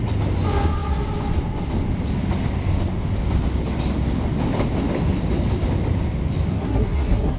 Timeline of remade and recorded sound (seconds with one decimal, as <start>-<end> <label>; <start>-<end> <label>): 0.0-6.5 recorded; 6.5-7.4 remade